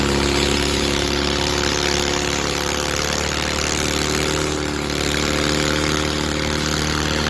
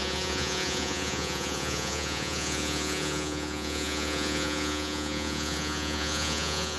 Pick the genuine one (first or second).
first